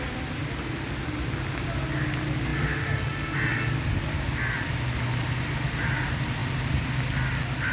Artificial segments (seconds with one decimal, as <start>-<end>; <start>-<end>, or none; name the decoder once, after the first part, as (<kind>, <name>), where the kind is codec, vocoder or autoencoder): none